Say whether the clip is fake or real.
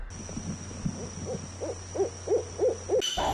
real